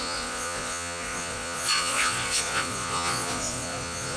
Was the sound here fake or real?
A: fake